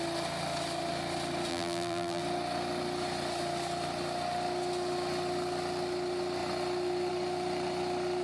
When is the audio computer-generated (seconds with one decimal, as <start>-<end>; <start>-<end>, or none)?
1.5-2.2